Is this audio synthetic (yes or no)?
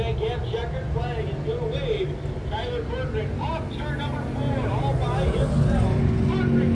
no